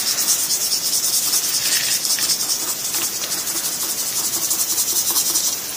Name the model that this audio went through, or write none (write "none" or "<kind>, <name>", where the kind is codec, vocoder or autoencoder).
vocoder, BigVGAN v2